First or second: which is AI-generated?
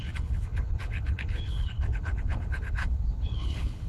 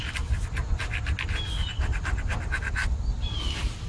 first